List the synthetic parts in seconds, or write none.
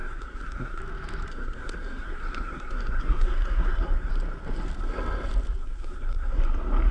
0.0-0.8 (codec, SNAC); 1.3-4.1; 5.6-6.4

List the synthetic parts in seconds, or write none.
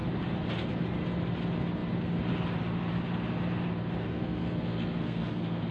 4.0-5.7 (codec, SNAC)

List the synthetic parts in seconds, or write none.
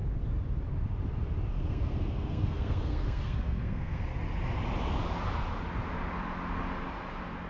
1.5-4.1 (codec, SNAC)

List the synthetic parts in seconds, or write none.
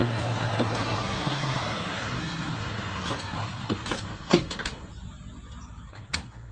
0.0-4.9 (codec, SNAC); 5.9-6.5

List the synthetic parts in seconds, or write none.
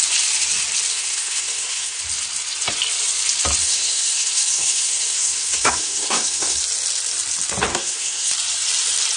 0.9-2.0 (codec, SNAC); 3.6-6.6; 7.7-8.3